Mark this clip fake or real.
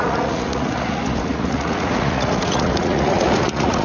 fake